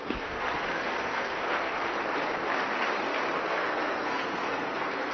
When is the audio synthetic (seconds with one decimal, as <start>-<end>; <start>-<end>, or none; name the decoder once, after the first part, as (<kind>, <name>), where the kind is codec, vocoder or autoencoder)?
0.0-1.7 (codec, SNAC); 3.5-5.1